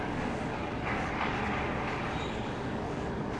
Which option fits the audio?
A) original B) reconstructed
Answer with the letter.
B